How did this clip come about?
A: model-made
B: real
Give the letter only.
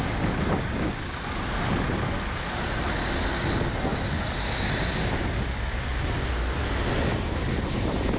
B